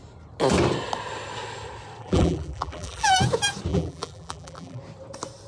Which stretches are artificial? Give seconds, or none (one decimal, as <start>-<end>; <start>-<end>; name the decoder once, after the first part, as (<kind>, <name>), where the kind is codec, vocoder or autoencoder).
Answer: 2.0-3.1 (vocoder, BigVGAN v2); 3.7-4.8